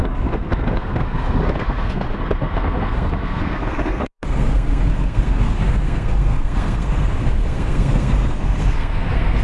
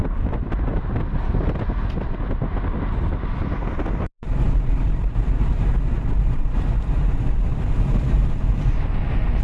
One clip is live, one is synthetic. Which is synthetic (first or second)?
first